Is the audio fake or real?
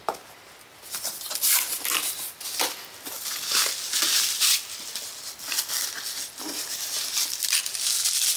real